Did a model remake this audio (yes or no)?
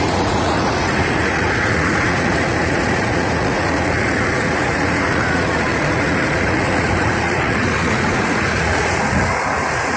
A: yes